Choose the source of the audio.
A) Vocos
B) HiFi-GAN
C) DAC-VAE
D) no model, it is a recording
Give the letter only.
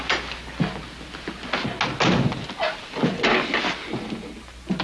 D